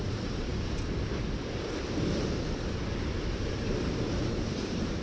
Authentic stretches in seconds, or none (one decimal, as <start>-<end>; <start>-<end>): 0.5-3.5